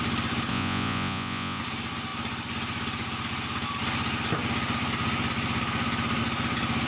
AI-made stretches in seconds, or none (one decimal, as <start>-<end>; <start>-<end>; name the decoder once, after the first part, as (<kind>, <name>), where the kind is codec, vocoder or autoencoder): 0.5-1.6 (vocoder, Vocos)